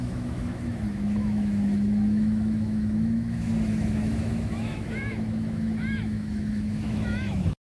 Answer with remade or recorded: remade